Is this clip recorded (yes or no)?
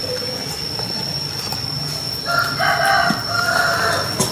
yes